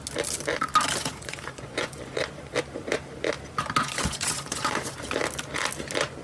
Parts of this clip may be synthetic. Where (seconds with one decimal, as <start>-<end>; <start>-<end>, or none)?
1.0-2.2; 3.8-5.0